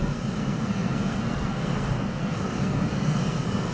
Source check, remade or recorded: remade